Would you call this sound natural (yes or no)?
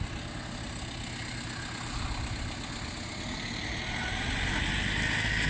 yes